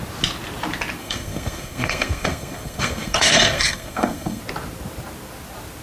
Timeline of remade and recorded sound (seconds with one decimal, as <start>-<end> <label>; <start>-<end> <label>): 0.0-1.0 recorded; 1.0-4.4 remade; 4.4-5.8 recorded